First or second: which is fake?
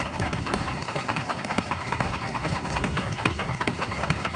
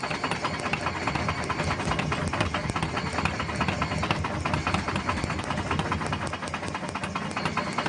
first